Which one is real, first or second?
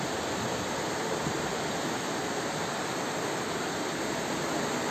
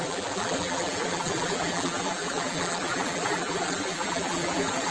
first